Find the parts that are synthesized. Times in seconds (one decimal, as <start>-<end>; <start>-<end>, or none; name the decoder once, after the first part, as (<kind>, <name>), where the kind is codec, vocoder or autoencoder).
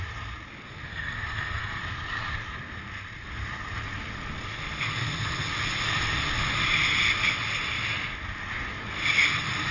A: 0.9-1.8 (codec, SNAC)